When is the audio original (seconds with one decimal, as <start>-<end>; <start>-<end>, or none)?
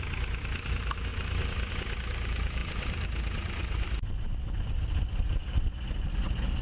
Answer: 0.0-6.6